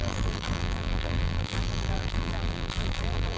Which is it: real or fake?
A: fake